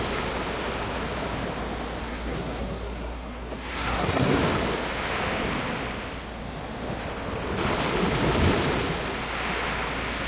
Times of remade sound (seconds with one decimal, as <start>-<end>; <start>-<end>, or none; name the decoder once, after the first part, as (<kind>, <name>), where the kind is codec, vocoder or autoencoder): 2.0-4.4 (codec, SNAC)